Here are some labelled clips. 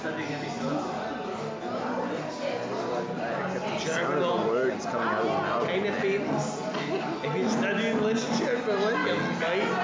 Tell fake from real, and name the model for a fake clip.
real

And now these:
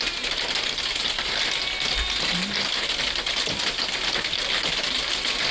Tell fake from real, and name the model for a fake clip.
real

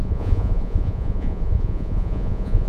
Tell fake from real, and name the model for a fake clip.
fake, vocoder, Vocos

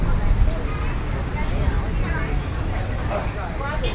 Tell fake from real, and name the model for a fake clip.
real